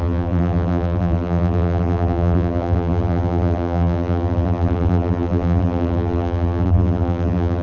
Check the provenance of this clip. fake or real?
fake